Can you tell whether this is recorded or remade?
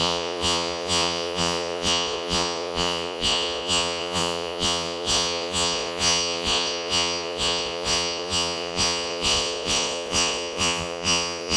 remade